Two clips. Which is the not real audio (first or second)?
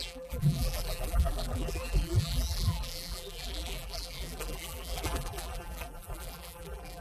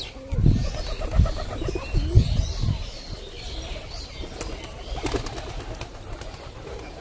first